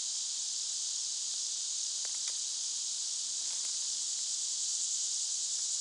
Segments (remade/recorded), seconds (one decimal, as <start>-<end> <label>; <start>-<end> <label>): 0.0-5.8 recorded